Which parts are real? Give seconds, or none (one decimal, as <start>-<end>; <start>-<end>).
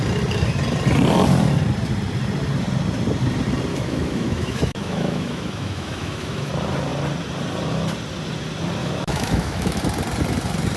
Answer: 0.0-3.7; 6.5-8.8; 9.8-10.8